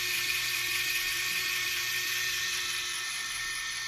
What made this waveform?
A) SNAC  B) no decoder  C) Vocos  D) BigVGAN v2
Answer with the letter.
D